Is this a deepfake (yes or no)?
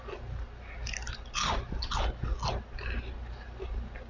no